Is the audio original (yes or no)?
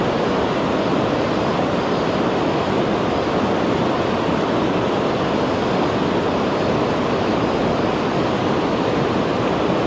yes